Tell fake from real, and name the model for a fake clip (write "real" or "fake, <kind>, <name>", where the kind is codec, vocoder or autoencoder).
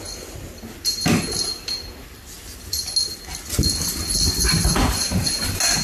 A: real